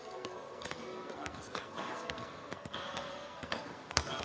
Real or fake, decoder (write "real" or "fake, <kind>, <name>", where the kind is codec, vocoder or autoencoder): fake, codec, SNAC